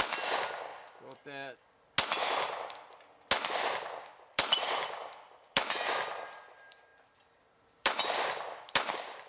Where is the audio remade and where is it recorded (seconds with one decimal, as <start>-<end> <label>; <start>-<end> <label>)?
0.0-0.7 remade; 0.7-4.1 recorded; 4.1-9.3 remade